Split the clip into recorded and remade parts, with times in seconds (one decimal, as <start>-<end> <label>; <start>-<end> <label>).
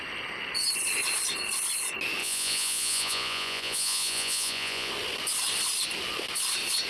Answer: 0.0-2.2 recorded; 2.2-4.9 remade; 4.9-6.9 recorded